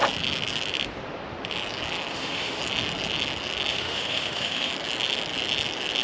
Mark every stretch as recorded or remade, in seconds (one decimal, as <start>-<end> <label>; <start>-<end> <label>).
0.0-2.1 recorded; 2.1-2.6 remade; 2.6-3.7 recorded; 3.7-4.7 remade; 4.7-6.0 recorded